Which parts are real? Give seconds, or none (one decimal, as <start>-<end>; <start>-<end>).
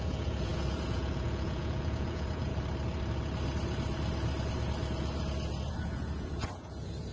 2.5-5.7